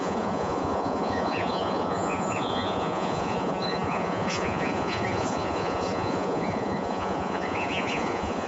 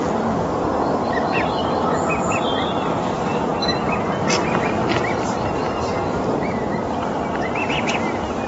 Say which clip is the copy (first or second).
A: first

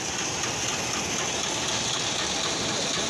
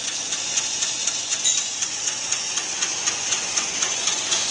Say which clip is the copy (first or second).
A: second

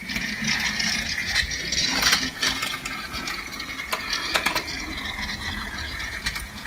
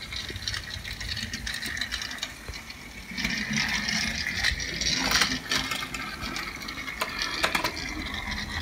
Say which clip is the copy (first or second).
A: first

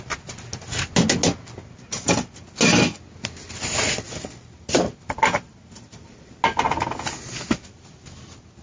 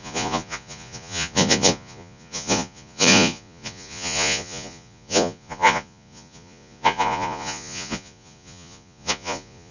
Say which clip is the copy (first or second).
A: second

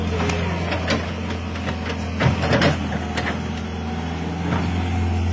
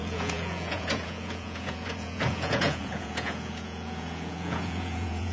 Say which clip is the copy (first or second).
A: second